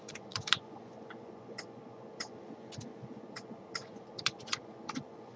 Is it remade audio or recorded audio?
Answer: remade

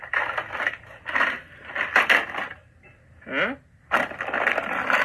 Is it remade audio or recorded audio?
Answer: recorded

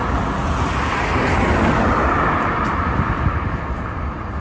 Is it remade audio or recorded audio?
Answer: recorded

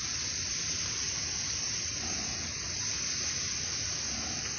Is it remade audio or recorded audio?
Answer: recorded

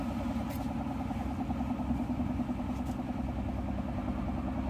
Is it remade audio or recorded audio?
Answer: recorded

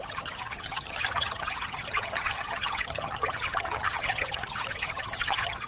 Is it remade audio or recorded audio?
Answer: remade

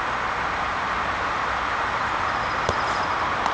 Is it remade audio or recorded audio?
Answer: recorded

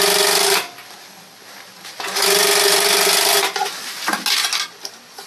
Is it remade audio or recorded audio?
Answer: recorded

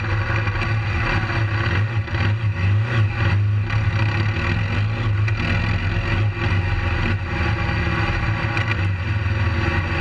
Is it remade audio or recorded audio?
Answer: recorded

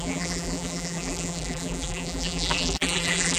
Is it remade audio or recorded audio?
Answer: remade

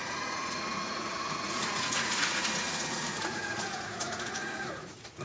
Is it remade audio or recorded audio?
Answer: remade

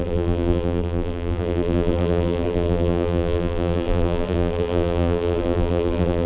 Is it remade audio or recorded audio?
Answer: remade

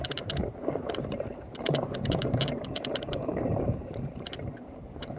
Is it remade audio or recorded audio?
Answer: remade